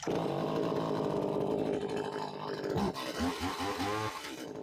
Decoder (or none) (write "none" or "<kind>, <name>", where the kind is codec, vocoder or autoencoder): none